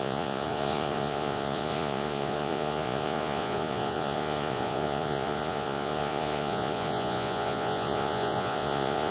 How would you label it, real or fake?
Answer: fake